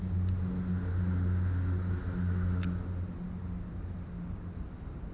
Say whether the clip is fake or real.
real